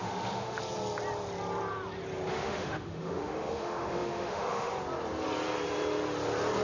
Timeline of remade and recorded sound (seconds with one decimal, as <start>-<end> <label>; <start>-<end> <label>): 0.0-0.6 remade; 0.6-2.3 recorded; 2.3-4.7 remade; 4.7-6.6 recorded